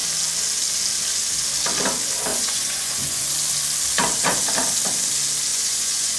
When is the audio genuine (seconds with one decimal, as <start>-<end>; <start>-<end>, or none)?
0.0-2.3; 3.3-5.5